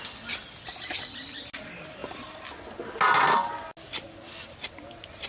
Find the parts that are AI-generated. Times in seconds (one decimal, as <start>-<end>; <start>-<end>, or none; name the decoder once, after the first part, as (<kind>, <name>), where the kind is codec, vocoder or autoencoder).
none